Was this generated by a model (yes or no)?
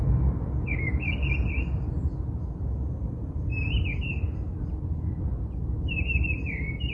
no